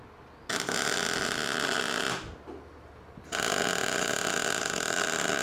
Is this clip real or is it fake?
real